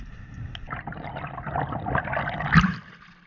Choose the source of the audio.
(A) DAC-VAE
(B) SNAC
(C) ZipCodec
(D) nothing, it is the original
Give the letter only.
D